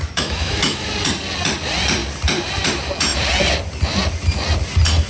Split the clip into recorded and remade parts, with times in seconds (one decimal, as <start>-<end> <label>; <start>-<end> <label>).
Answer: 0.0-0.9 remade; 0.9-5.1 recorded